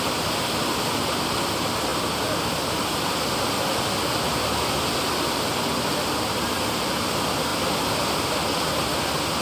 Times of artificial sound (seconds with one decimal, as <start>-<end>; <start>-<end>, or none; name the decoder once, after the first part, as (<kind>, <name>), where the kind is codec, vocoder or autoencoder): none